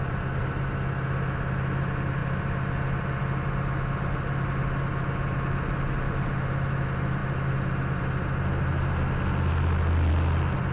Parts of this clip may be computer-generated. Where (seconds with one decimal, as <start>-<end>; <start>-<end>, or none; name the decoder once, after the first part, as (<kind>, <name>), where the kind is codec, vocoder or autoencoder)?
none